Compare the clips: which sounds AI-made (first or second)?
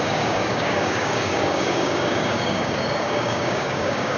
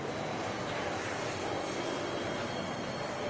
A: first